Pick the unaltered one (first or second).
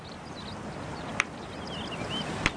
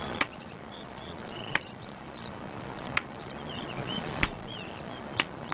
first